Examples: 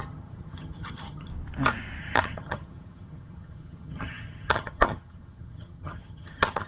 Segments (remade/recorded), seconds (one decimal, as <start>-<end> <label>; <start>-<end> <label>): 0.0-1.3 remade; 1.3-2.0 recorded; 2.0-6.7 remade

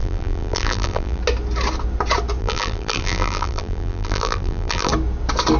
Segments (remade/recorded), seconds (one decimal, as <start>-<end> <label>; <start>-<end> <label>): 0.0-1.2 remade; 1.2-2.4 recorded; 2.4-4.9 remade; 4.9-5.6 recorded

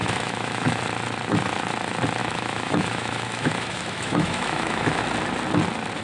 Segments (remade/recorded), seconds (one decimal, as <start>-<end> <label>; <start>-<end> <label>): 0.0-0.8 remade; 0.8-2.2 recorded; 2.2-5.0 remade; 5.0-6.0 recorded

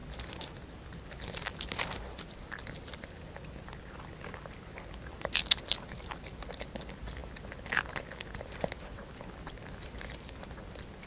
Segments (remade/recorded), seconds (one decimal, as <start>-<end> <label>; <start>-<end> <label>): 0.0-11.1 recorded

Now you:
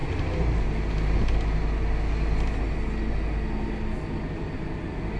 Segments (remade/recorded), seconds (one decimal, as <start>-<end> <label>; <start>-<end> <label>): 0.0-5.2 recorded

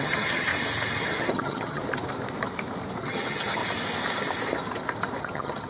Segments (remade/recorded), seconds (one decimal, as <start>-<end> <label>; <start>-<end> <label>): 0.0-0.5 remade; 0.5-1.0 recorded; 1.0-1.8 remade; 1.8-3.0 recorded; 3.0-3.6 remade; 3.6-5.2 recorded; 5.2-5.7 remade

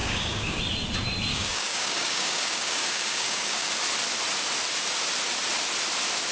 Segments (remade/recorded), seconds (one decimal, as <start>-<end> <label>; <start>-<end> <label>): 0.0-0.6 remade; 0.6-1.3 recorded; 1.3-3.7 remade; 3.7-6.3 recorded